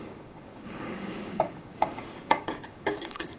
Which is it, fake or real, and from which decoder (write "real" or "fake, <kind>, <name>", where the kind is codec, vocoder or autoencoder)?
fake, codec, DAC